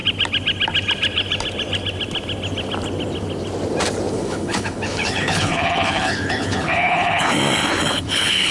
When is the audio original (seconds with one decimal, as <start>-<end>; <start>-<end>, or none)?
0.0-4.1; 7.3-7.9

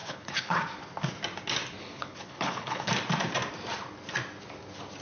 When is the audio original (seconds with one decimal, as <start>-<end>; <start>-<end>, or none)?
0.6-1.8; 2.9-5.0

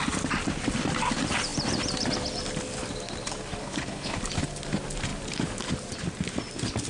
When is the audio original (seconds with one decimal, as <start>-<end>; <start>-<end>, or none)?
0.0-3.6; 4.2-6.9

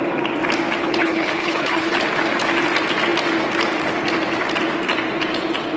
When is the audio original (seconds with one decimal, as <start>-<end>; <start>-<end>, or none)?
0.0-0.8; 1.9-5.8

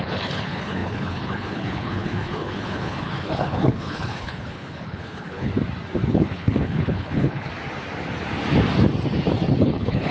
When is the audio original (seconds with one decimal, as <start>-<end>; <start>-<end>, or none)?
5.5-6.1; 7.5-9.6

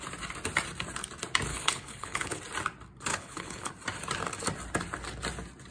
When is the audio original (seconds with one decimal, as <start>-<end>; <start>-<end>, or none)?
0.0-1.5; 2.4-3.1; 3.7-5.7

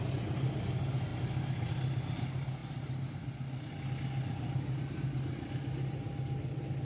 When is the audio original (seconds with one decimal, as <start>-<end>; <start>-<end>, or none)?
0.0-6.8